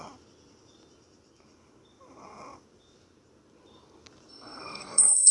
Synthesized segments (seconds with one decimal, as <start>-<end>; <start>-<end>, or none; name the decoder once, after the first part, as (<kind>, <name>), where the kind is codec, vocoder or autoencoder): 4.3-5.3 (codec, SNAC)